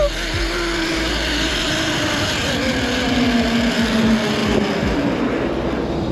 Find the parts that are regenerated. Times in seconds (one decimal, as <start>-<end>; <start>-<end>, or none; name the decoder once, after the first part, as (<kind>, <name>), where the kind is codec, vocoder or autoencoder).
0.7-2.4 (vocoder, BigVGAN v2)